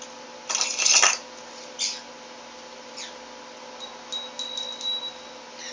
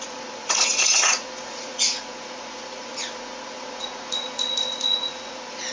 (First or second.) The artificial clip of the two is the second